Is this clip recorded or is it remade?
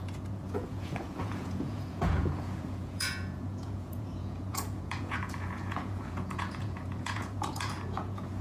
remade